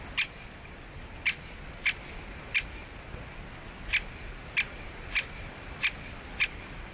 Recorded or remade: recorded